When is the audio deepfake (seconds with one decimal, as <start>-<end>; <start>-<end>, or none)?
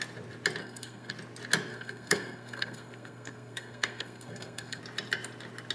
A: 0.6-1.1; 1.7-4.8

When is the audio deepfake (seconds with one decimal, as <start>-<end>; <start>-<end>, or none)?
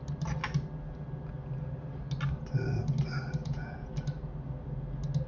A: 3.4-3.9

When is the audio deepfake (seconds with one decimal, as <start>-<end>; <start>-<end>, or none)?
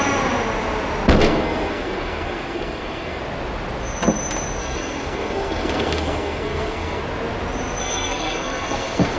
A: 1.2-3.2; 4.6-7.0; 7.8-9.2